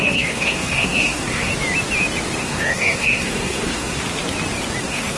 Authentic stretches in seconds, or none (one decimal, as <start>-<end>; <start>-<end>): 1.5-2.4; 4.0-4.8